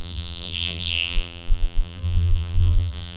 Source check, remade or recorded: remade